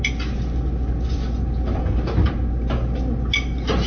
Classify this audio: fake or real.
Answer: real